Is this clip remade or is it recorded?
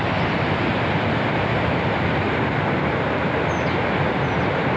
recorded